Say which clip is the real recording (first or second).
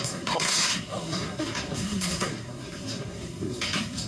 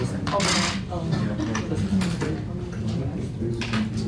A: second